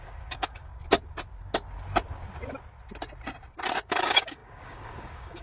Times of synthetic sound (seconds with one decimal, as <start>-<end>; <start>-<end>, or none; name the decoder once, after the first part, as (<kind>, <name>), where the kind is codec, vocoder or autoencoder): 0.0-0.7 (codec, DAC); 3.9-5.4